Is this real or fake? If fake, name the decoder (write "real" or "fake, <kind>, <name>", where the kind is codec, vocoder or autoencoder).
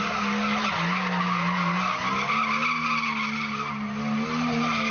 real